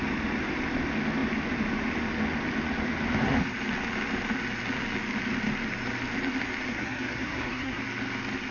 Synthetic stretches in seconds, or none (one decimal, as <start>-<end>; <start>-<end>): 6.7-7.8